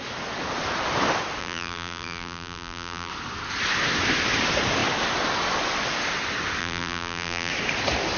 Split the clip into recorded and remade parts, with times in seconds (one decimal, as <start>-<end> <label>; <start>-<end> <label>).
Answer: 0.0-1.4 recorded; 1.4-3.1 remade; 3.1-6.6 recorded; 6.6-7.5 remade; 7.5-8.2 recorded